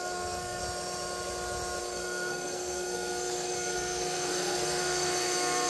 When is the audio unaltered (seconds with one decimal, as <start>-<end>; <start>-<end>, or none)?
0.6-1.8